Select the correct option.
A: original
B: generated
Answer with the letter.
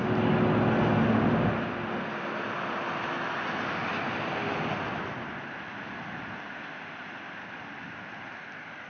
A